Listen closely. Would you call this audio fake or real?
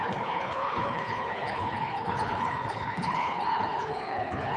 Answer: fake